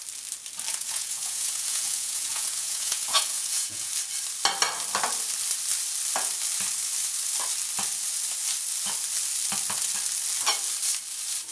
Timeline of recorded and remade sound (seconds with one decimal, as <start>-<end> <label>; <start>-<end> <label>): 0.0-0.7 recorded; 0.7-3.9 remade; 3.9-11.5 recorded